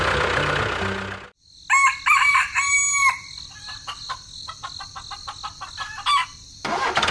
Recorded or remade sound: recorded